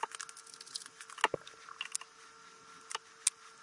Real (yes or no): yes